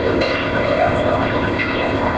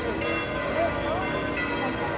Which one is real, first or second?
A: second